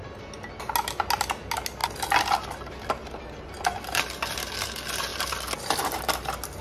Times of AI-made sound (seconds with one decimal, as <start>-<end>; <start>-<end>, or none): none